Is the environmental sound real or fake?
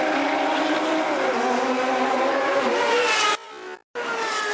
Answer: real